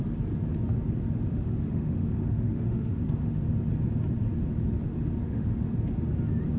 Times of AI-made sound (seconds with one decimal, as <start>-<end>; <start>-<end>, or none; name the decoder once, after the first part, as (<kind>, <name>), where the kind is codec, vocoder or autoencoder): 1.3-3.4 (autoencoder, DAC-VAE); 5.2-5.7